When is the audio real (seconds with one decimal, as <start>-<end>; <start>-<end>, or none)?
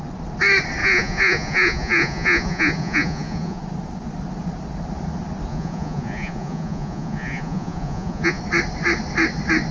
0.0-0.8; 3.6-5.5; 8.4-9.7